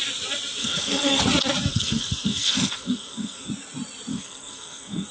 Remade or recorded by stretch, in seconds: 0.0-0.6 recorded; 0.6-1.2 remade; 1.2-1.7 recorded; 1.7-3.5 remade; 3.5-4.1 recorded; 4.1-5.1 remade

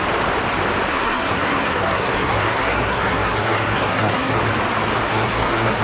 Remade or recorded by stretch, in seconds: 0.0-0.9 recorded; 0.9-4.4 remade; 4.4-5.1 recorded; 5.1-5.8 remade

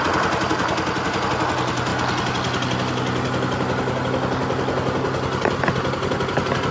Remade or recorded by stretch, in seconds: 0.0-6.7 recorded

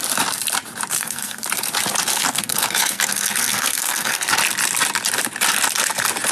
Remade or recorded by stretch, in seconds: 0.0-0.9 recorded; 0.9-1.4 remade; 1.4-2.1 recorded; 2.1-4.3 remade; 4.3-6.3 recorded

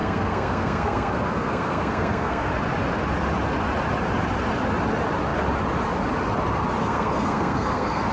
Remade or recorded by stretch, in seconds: 0.0-2.5 remade; 2.5-6.8 recorded; 6.8-8.1 remade

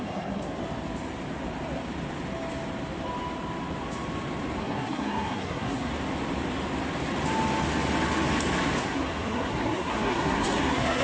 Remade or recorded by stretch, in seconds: 0.0-0.6 remade; 0.6-4.6 recorded; 4.6-5.9 remade; 5.9-8.8 recorded; 8.8-11.0 remade

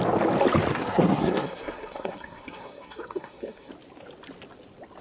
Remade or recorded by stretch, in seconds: 0.0-0.7 recorded; 0.7-3.7 remade; 3.7-5.0 recorded

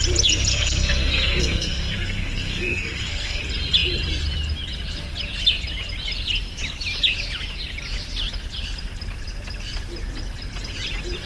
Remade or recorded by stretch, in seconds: 0.0-0.5 recorded; 0.5-3.4 remade; 3.4-11.3 recorded